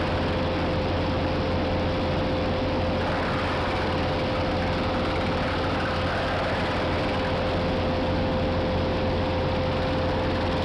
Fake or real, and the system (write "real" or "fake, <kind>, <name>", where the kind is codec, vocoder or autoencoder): real